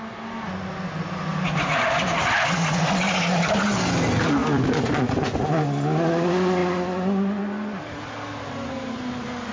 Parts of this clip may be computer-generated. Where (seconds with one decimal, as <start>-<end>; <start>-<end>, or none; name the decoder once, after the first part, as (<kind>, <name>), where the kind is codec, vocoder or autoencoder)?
none